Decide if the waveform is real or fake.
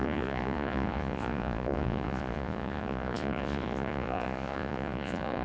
fake